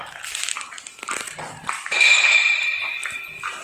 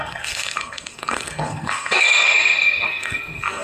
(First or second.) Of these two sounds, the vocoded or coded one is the second